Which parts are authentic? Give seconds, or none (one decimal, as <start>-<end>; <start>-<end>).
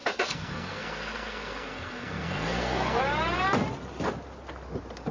3.0-5.1